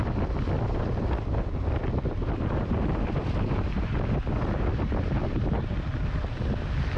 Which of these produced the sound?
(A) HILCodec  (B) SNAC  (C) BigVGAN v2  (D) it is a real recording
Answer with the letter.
D